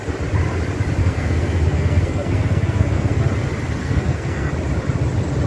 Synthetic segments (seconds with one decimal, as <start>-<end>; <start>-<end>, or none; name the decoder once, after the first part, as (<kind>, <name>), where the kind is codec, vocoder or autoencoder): 1.0-3.2 (codec, SNAC); 3.8-4.5

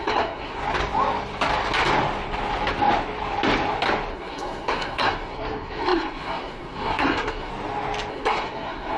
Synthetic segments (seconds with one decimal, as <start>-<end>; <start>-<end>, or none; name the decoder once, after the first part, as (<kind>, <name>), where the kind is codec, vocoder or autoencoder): 0.0-0.6 (codec, SNAC); 4.1-7.5; 8.1-9.0

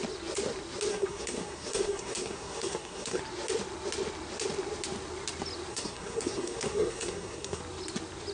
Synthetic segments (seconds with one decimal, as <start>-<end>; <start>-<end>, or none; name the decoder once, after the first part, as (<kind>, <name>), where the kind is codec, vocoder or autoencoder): 0.9-3.2 (codec, SNAC); 5.7-7.6